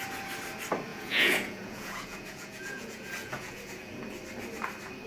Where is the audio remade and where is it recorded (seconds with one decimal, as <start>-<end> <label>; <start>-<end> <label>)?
0.0-0.9 recorded; 0.9-4.0 remade; 4.0-5.1 recorded